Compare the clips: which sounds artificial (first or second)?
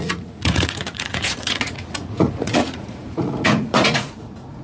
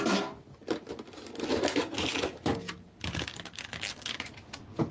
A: first